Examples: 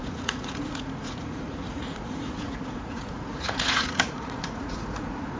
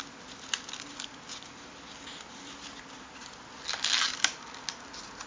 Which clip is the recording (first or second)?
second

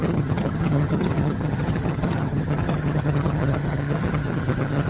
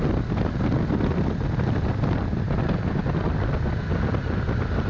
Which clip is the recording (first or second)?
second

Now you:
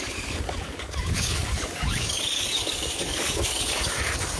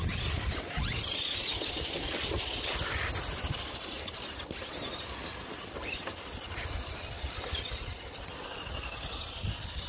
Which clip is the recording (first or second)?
second